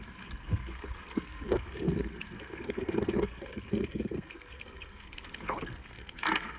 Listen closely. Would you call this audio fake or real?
fake